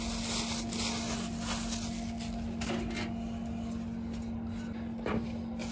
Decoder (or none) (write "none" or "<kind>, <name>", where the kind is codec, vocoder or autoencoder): none